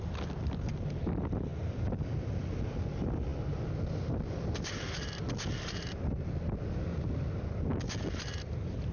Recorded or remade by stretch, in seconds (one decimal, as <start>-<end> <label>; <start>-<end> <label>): 0.0-8.9 recorded